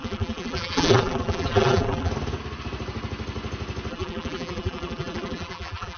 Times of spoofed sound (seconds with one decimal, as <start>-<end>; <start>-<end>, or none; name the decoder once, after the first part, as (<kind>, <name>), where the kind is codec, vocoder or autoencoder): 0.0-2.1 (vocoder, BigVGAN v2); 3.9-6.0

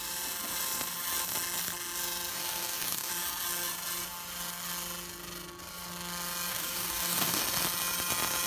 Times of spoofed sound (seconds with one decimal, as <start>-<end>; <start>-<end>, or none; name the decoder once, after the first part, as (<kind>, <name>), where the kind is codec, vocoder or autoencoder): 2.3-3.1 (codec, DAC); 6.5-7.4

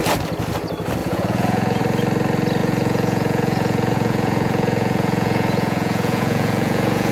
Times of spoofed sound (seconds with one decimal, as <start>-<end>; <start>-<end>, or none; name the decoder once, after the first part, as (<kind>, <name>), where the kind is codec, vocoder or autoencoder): 1.0-1.8 (vocoder, Vocos); 2.6-7.1